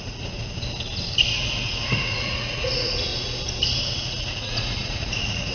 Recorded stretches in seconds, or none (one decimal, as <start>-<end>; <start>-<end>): 0.4-1.3; 3.1-3.7